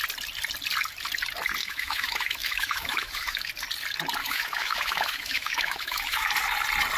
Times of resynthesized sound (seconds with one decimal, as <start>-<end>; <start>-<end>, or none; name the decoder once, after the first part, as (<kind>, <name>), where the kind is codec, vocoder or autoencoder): 1.6-3.5 (autoencoder, DAC-VAE); 4.2-6.3